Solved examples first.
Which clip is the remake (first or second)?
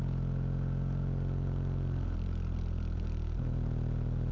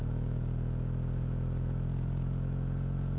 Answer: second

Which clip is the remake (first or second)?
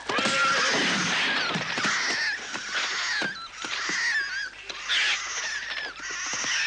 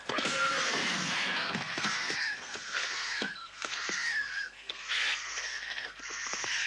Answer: second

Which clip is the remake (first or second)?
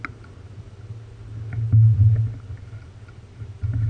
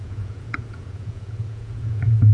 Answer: second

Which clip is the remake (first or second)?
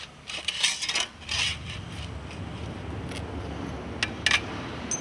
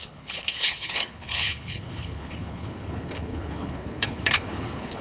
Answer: second